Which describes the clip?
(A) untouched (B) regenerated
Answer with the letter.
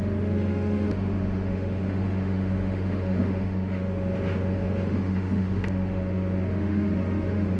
B